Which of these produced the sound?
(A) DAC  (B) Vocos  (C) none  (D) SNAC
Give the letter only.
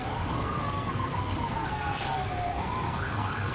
D